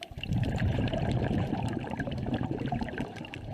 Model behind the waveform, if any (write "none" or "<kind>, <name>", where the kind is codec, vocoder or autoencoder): vocoder, BigVGAN v2